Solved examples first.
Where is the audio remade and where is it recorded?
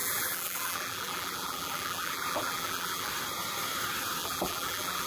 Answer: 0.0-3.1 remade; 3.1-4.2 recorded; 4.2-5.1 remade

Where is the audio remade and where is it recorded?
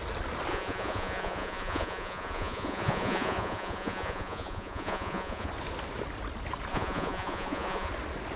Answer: 0.0-0.5 recorded; 0.5-5.5 remade; 5.5-6.7 recorded; 6.7-7.9 remade; 7.9-8.4 recorded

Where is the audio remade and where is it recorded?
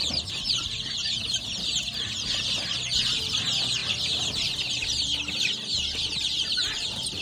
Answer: 0.0-1.8 remade; 1.8-3.8 recorded; 3.8-7.2 remade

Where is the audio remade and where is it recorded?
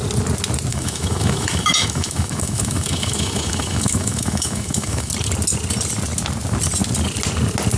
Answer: 0.0-0.7 recorded; 0.7-5.1 remade; 5.1-7.8 recorded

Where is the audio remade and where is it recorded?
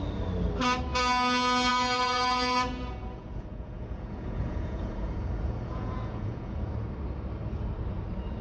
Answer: 0.0-1.7 recorded; 1.7-6.7 remade; 6.7-8.4 recorded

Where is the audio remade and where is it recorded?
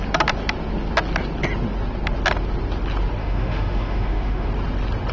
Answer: 0.0-3.2 recorded; 3.2-4.5 remade; 4.5-5.1 recorded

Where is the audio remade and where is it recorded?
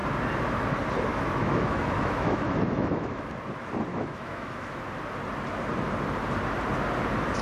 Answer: 0.0-1.1 recorded; 1.1-3.3 remade; 3.3-3.9 recorded; 3.9-4.8 remade; 4.8-7.4 recorded